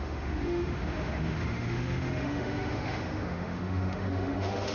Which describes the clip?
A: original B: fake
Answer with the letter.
B